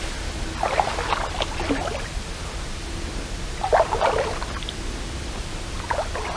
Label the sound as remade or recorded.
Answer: recorded